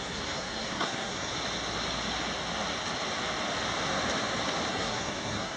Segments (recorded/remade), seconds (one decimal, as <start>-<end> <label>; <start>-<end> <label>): 0.0-1.3 remade; 1.3-4.7 recorded; 4.7-5.6 remade